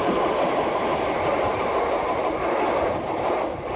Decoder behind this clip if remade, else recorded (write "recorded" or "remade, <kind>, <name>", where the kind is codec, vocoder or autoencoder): remade, vocoder, BigVGAN v2